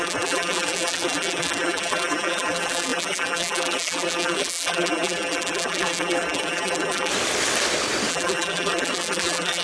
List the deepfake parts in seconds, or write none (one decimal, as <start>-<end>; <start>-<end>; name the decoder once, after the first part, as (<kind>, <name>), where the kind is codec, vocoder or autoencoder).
0.0-7.1 (vocoder, BigVGAN v2); 8.1-9.6